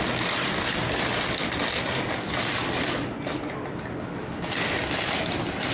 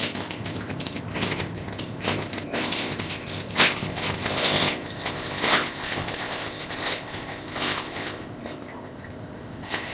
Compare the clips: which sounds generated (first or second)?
second